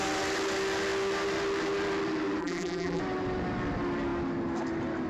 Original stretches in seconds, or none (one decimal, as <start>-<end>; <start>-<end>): 0.0-2.4; 3.0-5.1